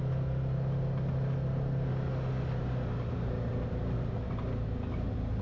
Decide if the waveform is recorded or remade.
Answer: recorded